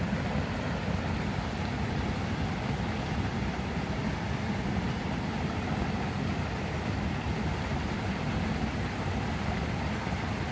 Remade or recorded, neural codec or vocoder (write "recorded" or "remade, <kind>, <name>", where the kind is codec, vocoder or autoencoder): recorded